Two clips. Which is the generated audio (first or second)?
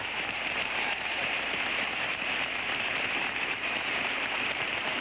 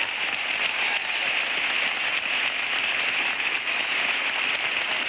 first